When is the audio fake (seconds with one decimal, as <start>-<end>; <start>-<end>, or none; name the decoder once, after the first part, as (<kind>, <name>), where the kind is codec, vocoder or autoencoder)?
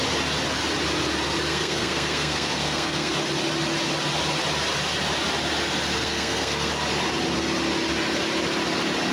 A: 1.5-3.1 (codec, SNAC); 6.0-6.7